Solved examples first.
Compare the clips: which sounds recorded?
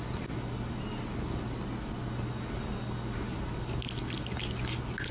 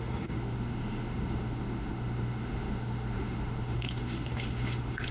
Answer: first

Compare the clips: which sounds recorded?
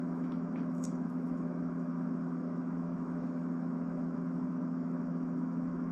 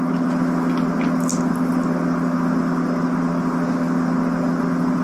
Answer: second